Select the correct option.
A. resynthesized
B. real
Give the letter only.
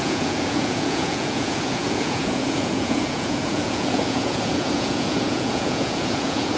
A